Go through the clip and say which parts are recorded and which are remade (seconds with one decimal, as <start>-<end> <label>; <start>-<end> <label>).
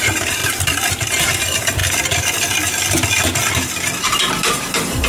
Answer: 0.0-0.4 remade; 0.4-0.9 recorded; 0.9-1.8 remade; 1.8-4.0 recorded; 4.0-5.1 remade